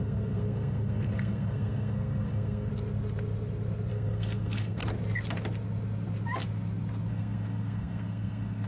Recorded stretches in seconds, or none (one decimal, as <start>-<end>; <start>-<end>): 2.7-3.9; 4.8-7.1